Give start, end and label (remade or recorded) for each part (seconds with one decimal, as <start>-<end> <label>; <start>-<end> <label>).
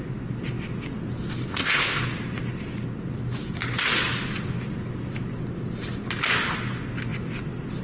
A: 0.0-1.5 recorded; 1.5-2.0 remade; 2.0-7.8 recorded